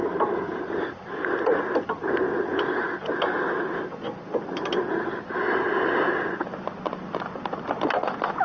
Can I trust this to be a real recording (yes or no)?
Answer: yes